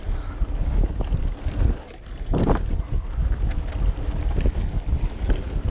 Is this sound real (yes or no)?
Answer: yes